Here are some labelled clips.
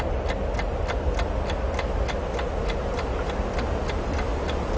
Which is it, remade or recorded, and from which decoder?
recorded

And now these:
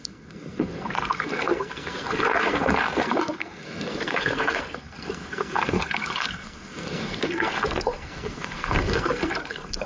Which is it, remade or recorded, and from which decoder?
remade, codec, SNAC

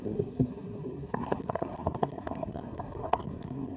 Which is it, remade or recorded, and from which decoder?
remade, codec, SNAC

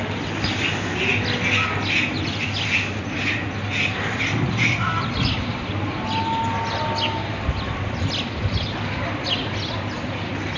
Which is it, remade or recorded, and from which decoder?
recorded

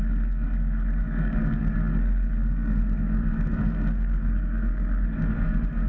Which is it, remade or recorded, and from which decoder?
remade, codec, SNAC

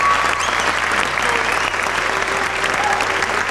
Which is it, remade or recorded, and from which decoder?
recorded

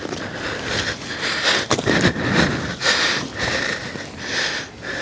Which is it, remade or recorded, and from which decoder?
recorded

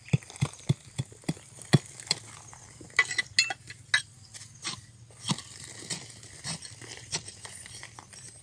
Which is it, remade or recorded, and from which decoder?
recorded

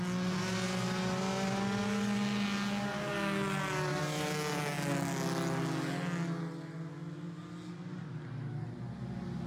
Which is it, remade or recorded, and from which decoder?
recorded